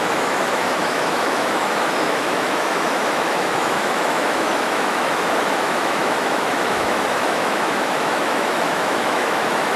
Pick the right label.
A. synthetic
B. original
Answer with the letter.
A